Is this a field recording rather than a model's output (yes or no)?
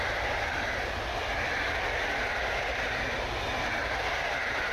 yes